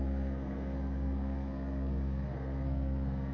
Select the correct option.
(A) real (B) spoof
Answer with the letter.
B